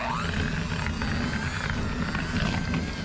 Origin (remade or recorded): recorded